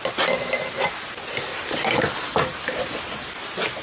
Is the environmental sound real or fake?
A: real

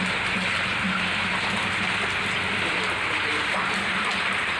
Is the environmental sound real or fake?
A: real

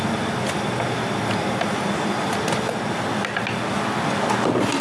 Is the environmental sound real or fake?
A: real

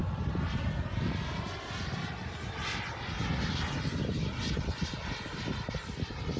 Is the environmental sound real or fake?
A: real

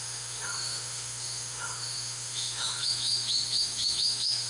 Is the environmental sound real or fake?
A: fake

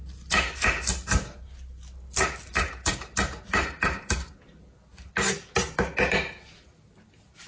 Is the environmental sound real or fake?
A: real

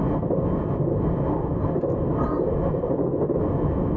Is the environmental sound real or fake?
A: real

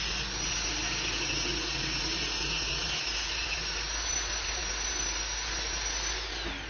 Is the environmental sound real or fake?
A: real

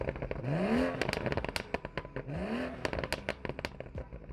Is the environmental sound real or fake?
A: real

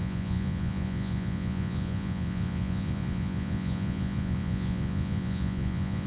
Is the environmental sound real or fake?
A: fake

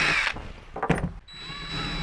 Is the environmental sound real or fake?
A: real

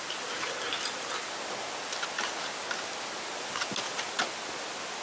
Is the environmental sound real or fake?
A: real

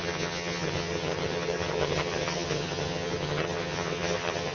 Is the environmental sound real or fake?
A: fake